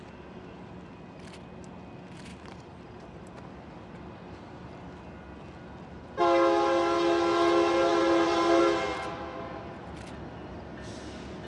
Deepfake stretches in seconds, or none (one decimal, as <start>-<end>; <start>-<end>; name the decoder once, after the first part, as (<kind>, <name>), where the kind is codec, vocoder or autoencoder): 2.3-3.2 (vocoder, BigVGAN v2); 7.9-8.6